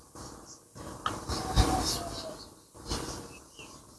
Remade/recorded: recorded